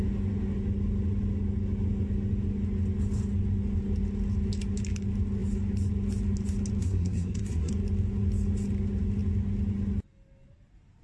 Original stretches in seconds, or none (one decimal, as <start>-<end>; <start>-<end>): 0.0-6.8; 7.7-11.0